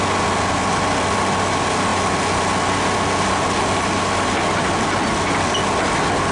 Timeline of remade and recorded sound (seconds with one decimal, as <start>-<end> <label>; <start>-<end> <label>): 0.0-6.3 recorded